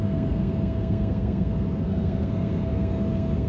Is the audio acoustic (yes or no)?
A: no